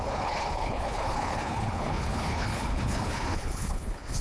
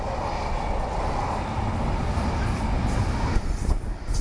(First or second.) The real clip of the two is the second